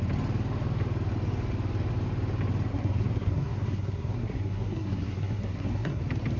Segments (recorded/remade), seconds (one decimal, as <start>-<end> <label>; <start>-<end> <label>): 0.0-2.7 recorded; 2.7-6.0 remade; 6.0-6.4 recorded